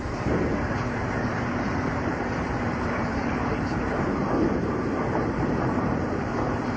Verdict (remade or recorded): remade